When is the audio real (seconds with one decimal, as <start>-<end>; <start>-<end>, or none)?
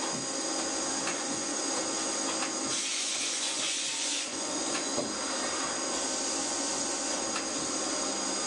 0.0-1.1; 1.6-2.9; 5.0-6.4; 7.2-8.5